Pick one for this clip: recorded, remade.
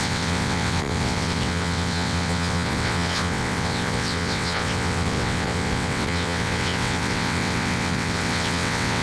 remade